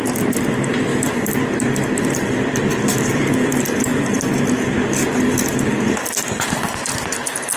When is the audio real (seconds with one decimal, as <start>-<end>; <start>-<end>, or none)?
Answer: 3.9-6.3